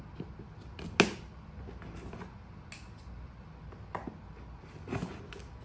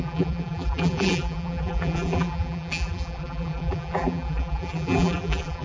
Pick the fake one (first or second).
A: second